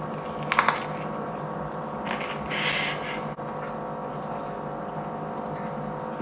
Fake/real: real